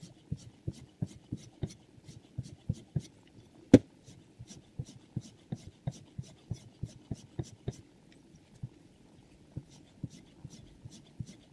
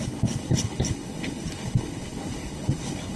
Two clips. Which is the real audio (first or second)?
first